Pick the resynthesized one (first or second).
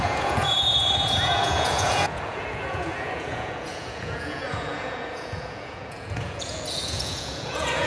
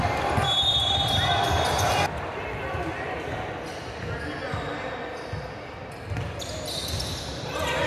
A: first